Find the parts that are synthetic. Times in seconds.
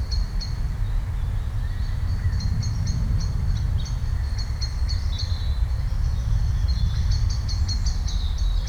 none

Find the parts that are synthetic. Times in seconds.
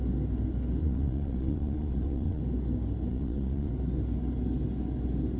0.8-2.4 (vocoder, Vocos); 3.1-3.7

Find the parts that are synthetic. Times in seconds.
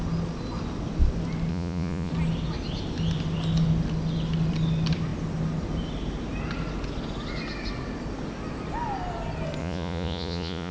1.5-2.1 (vocoder, Vocos); 9.6-10.7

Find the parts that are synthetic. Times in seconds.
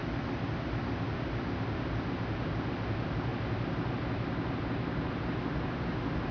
none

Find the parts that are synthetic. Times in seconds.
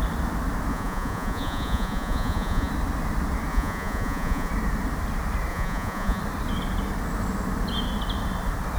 0.7-2.7 (vocoder, Vocos); 3.5-4.5; 5.5-6.2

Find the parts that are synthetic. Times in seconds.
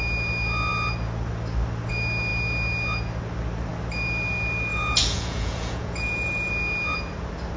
4.7-6.5 (vocoder, Vocos)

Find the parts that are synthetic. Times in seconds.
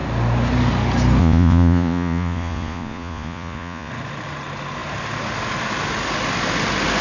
1.2-3.9 (vocoder, Vocos)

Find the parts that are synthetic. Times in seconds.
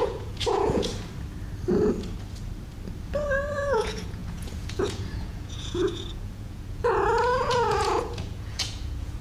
0.0-0.9 (vocoder, Vocos); 3.5-9.2